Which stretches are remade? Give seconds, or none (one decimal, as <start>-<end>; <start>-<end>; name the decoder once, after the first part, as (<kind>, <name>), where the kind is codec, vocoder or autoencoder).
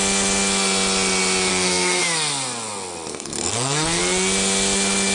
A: 1.5-2.0 (codec, SNAC); 3.1-4.0